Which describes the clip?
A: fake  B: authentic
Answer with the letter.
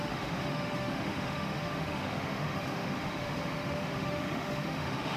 A